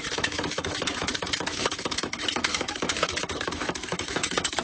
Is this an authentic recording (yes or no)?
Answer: no